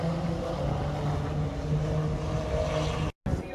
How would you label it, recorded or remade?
recorded